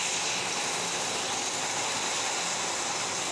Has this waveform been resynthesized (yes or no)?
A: no